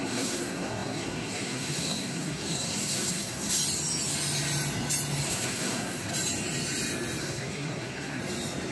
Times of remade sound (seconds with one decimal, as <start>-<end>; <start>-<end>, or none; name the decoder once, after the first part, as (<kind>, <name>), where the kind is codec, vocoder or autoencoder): 0.0-3.6 (codec, SNAC); 5.3-6.1; 7.2-8.2